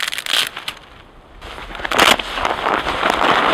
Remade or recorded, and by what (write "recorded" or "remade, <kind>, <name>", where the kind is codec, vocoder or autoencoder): recorded